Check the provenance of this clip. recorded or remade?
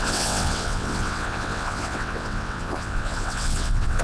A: remade